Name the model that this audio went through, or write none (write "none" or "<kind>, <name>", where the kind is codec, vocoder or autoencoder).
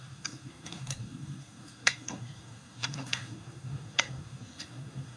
codec, SNAC